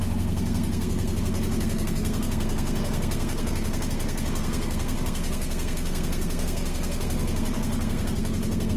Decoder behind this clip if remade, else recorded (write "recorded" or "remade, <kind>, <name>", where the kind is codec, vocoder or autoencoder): remade, codec, SNAC